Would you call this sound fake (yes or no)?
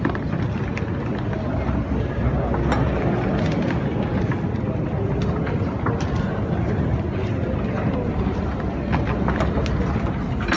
no